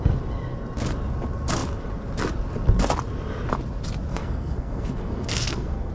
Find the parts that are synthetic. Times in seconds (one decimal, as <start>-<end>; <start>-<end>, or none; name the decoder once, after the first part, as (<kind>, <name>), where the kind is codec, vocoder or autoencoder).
4.1-5.9 (codec, SNAC)